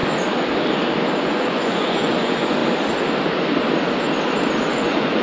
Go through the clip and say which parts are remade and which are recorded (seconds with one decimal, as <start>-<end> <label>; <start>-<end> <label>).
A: 0.0-1.2 recorded; 1.2-2.6 remade; 2.6-4.6 recorded; 4.6-5.2 remade